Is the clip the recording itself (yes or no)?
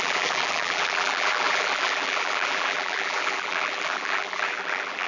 no